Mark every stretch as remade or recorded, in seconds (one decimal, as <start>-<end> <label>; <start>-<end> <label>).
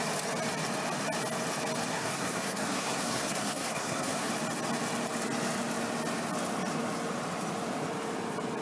0.0-1.9 recorded; 1.9-4.3 remade; 4.3-8.6 recorded